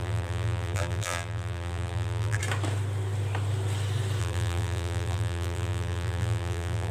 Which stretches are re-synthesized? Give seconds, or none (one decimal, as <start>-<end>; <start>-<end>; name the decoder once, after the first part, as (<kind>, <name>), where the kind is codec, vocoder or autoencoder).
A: 0.0-2.4 (vocoder, BigVGAN v2); 4.2-6.9